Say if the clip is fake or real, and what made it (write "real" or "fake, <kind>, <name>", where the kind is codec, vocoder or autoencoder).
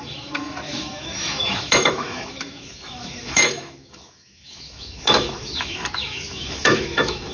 fake, autoencoder, DAC-VAE